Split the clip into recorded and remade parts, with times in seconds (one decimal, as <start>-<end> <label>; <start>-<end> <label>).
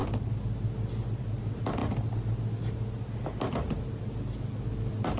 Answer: 0.0-5.2 recorded